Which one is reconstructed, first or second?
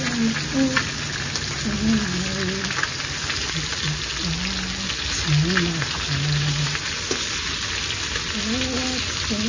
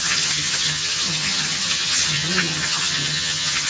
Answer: second